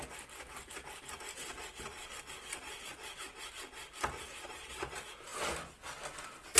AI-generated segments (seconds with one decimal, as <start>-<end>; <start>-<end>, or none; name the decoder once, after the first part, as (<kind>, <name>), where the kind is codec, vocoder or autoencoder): none